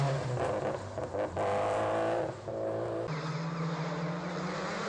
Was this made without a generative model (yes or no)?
yes